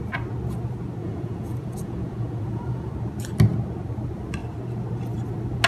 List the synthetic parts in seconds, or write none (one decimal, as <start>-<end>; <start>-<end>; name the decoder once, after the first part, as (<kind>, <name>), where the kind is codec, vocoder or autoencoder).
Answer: 1.0-2.9 (vocoder, Vocos)